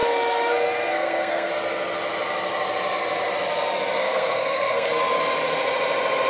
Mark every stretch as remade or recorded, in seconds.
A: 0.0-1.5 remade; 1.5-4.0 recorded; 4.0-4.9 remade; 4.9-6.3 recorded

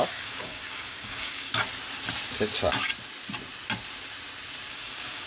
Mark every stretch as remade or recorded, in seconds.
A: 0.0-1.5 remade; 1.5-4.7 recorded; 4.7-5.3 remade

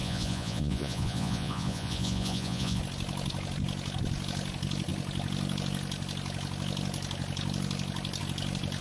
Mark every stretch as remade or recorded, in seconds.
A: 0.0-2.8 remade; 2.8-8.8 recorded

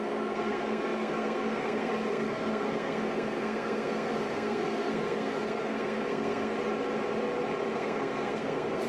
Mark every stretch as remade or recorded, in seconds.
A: 0.0-6.6 remade; 6.6-7.7 recorded; 7.7-8.9 remade

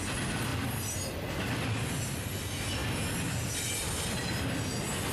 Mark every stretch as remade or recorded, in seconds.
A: 0.0-5.1 recorded

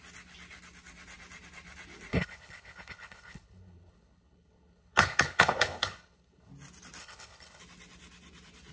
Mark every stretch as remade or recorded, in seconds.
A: 0.0-2.1 recorded; 2.1-6.5 remade; 6.5-7.0 recorded; 7.0-7.6 remade; 7.6-8.7 recorded

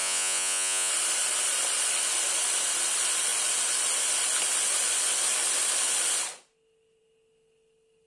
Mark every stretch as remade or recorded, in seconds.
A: 0.0-0.9 remade; 0.9-8.1 recorded